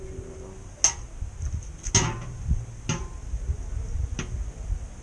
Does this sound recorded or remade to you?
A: recorded